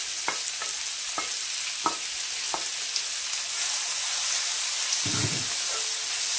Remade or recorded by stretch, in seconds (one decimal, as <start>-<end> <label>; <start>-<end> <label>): 0.0-6.4 recorded